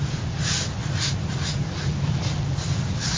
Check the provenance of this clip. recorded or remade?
recorded